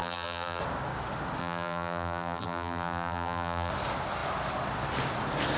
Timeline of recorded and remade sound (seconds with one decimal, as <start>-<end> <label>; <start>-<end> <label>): 0.0-0.6 remade; 0.6-1.4 recorded; 1.4-3.7 remade; 3.7-5.6 recorded